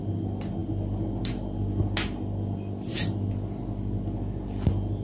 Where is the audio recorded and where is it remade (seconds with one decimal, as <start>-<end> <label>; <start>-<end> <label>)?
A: 0.0-5.0 recorded